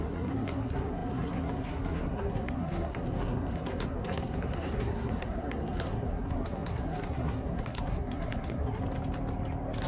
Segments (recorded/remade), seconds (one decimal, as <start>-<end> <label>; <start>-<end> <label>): 0.0-8.8 remade; 8.8-9.9 recorded